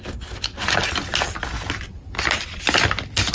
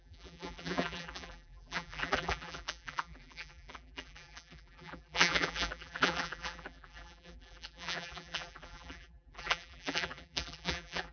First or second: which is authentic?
first